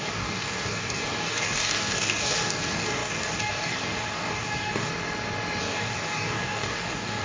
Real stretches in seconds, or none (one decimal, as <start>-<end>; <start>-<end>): 4.9-5.6